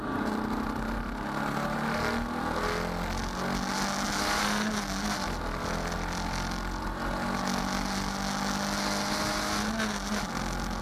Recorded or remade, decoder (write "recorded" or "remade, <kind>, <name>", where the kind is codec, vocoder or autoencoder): recorded